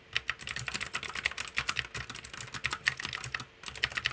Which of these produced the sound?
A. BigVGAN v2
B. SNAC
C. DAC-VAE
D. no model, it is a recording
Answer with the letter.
D